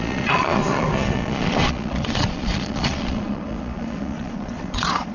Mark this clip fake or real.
fake